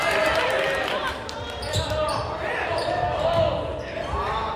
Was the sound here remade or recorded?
recorded